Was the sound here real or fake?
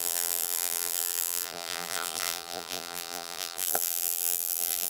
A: fake